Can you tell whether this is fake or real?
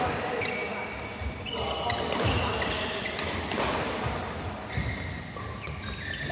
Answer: real